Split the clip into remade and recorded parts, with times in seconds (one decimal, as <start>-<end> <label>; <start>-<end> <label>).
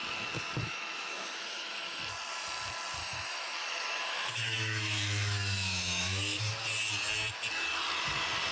0.0-0.6 recorded; 0.6-2.0 remade; 2.0-3.0 recorded; 3.0-6.5 remade; 6.5-8.5 recorded